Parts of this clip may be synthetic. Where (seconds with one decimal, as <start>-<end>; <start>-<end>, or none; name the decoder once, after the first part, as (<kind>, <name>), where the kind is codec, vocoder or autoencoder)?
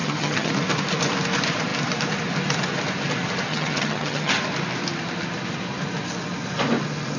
0.0-0.5 (vocoder, HiFi-GAN); 3.5-4.3